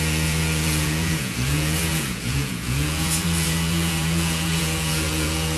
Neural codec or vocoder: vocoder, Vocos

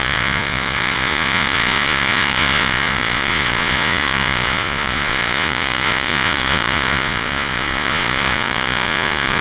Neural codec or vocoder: vocoder, Vocos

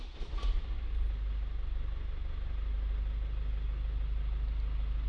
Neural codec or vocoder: none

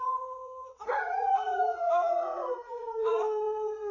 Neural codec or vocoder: vocoder, Vocos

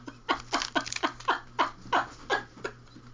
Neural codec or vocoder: none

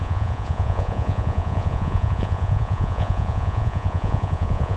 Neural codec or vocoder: vocoder, Vocos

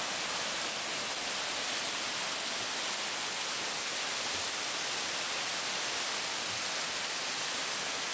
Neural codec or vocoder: none